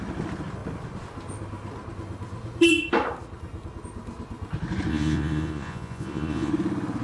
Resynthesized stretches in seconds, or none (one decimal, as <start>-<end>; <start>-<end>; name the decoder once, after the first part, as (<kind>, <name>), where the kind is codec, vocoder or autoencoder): 4.9-6.5 (vocoder, Vocos)